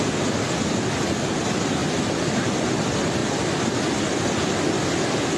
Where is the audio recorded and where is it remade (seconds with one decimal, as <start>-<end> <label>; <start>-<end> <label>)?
0.0-1.8 recorded; 1.8-2.7 remade; 2.7-5.4 recorded